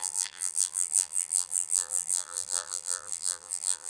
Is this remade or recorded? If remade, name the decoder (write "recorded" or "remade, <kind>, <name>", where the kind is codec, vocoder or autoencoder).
remade, vocoder, BigVGAN v2